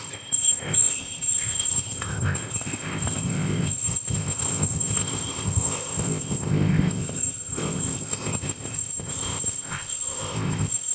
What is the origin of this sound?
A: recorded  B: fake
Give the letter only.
B